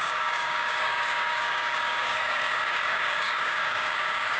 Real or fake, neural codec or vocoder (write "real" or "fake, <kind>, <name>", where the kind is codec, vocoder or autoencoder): fake, codec, DAC